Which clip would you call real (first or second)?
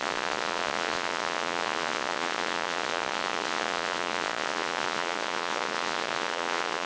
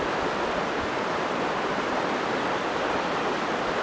second